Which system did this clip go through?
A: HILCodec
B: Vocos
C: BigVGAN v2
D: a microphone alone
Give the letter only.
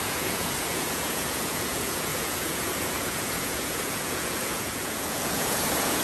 B